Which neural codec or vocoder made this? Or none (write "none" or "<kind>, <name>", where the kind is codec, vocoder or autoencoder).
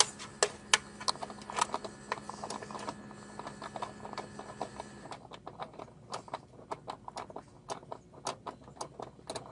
none